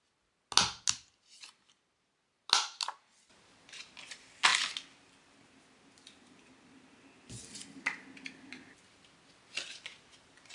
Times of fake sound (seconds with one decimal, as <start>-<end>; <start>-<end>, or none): none